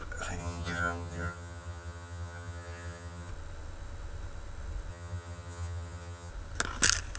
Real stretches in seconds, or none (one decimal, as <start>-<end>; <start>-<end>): 0.0-0.4; 3.3-4.9; 6.3-7.2